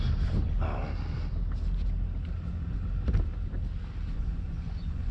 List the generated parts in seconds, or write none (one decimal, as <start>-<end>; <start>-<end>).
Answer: 4.1-5.1